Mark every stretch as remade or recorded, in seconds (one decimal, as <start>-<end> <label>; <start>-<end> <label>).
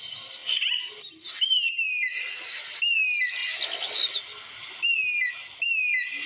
0.0-6.3 recorded